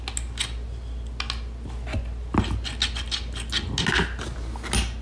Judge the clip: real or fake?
real